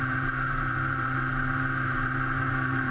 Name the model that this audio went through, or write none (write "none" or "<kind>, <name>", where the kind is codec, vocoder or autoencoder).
vocoder, BigVGAN v2